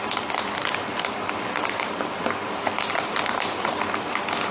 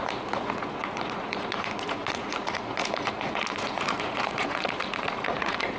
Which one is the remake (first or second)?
second